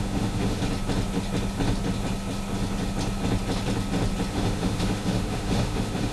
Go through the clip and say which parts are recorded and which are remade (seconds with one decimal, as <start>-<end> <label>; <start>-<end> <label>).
0.0-0.6 remade; 0.6-4.3 recorded; 4.3-6.1 remade